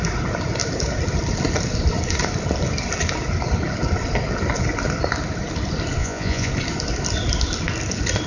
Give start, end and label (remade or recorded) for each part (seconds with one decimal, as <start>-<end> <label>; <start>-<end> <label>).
0.0-6.0 recorded; 6.0-6.5 remade; 6.5-8.3 recorded